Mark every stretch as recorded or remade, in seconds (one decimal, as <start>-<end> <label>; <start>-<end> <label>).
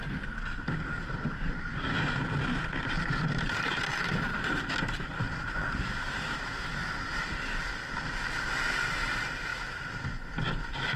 0.0-2.8 recorded; 2.8-4.5 remade; 4.5-11.0 recorded